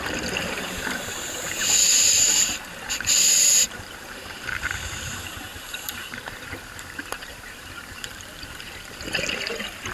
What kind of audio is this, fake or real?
fake